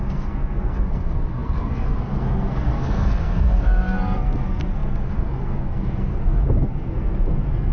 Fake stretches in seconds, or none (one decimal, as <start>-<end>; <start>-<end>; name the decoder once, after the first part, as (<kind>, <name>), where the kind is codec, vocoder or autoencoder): 0.0-7.7 (codec, SNAC)